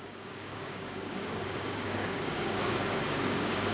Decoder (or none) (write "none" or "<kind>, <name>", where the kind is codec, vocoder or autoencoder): codec, DAC